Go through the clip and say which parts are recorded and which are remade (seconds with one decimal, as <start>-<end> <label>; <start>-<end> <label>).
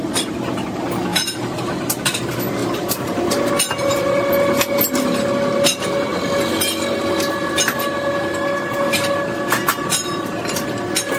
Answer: 0.0-1.1 recorded; 1.1-1.7 remade; 1.7-2.6 recorded; 2.6-3.5 remade; 3.5-3.9 recorded; 3.9-4.8 remade; 4.8-11.2 recorded